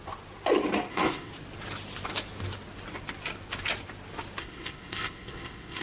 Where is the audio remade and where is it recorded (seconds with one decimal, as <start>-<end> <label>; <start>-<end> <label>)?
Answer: 0.0-0.9 recorded; 0.9-1.3 remade; 1.3-4.4 recorded; 4.4-5.8 remade